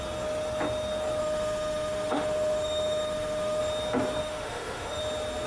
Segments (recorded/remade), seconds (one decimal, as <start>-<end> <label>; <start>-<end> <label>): 0.0-1.2 recorded; 1.2-3.6 remade; 3.6-4.2 recorded; 4.2-5.0 remade; 5.0-5.5 recorded